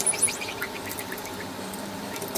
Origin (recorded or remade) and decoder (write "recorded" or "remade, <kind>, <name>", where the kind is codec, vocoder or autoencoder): remade, vocoder, BigVGAN v2